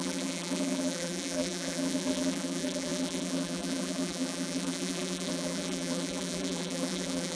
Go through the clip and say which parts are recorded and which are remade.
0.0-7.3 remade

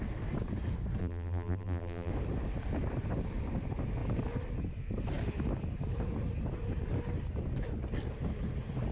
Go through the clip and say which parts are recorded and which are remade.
0.0-1.0 recorded; 1.0-2.1 remade; 2.1-8.9 recorded

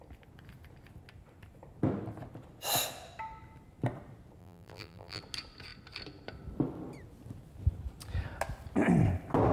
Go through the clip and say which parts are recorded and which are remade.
0.0-4.4 recorded; 4.4-5.2 remade; 5.2-9.5 recorded

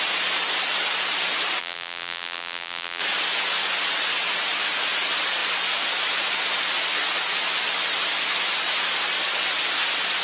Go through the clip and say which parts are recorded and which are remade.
0.0-1.6 recorded; 1.6-3.0 remade; 3.0-10.2 recorded

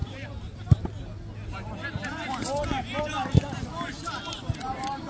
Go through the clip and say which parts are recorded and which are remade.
0.0-0.6 remade; 0.6-2.1 recorded; 2.1-5.1 remade

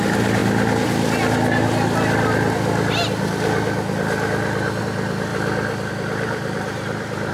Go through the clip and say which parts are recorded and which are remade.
0.0-0.4 remade; 0.4-4.8 recorded; 4.8-5.3 remade; 5.3-5.9 recorded; 5.9-7.3 remade

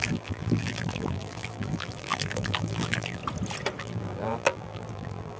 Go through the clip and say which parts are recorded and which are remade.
0.0-3.2 remade; 3.2-3.8 recorded; 3.8-5.4 remade

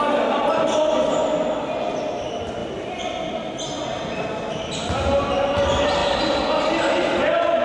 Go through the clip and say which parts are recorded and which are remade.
0.0-6.0 recorded; 6.0-6.8 remade; 6.8-7.6 recorded